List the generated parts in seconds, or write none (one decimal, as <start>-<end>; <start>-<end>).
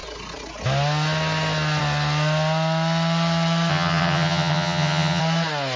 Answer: 3.7-5.2